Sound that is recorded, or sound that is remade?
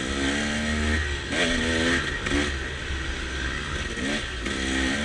recorded